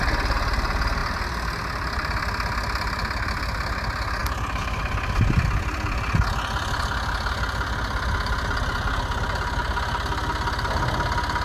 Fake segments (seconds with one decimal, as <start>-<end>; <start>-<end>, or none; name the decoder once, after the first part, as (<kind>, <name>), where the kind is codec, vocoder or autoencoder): none